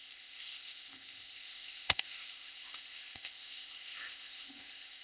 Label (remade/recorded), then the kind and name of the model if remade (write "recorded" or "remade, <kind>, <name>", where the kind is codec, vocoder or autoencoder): remade, codec, ZipCodec